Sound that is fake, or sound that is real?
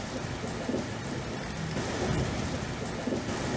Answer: real